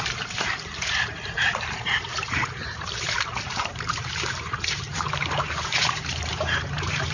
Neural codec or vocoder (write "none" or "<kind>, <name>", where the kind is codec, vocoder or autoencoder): vocoder, BigVGAN v2